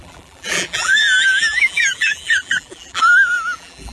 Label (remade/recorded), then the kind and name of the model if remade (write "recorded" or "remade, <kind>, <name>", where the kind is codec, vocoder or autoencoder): remade, vocoder, BigVGAN v2